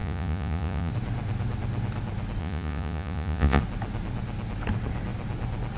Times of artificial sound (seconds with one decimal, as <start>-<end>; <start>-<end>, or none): 0.0-0.9; 2.4-3.6